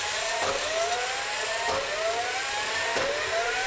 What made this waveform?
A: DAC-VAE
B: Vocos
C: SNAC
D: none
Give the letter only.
D